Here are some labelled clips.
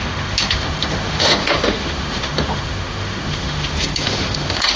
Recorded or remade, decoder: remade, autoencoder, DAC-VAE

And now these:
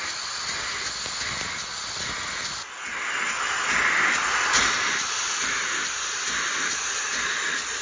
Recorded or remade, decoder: recorded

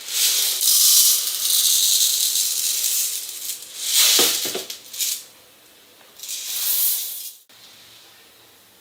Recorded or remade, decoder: recorded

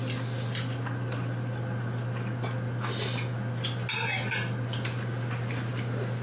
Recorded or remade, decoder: recorded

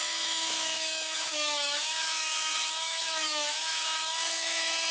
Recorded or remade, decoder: remade, autoencoder, DAC-VAE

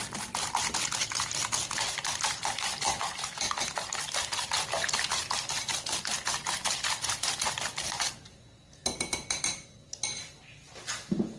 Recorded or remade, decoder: recorded